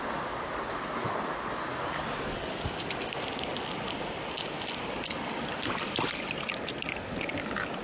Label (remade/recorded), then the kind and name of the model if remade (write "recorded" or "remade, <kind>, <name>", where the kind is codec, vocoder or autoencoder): recorded